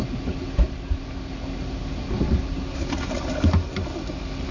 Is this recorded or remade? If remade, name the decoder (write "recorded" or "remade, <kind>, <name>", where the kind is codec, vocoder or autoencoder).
recorded